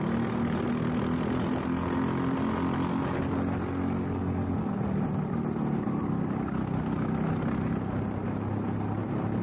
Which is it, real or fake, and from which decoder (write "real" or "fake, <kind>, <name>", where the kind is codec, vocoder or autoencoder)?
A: real